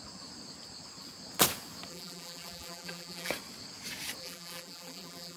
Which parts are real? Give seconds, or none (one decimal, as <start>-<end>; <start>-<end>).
0.0-1.9; 3.3-4.2